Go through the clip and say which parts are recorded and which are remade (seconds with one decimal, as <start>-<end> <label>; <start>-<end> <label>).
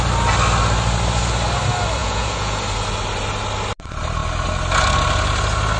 0.0-2.0 recorded; 2.0-2.6 remade; 2.6-5.8 recorded